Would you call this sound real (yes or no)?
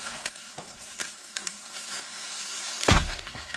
no